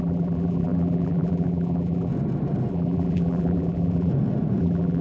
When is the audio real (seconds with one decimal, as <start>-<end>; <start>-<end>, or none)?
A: 2.1-2.7; 4.1-4.6